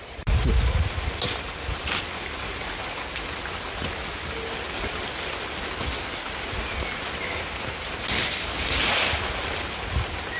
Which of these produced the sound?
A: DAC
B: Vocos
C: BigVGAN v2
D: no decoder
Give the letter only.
D